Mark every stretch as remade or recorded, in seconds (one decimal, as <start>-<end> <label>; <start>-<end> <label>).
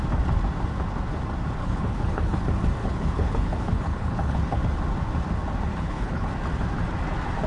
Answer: 0.0-1.6 recorded; 1.6-2.4 remade; 2.4-2.8 recorded; 2.8-4.6 remade; 4.6-5.7 recorded; 5.7-6.3 remade; 6.3-7.5 recorded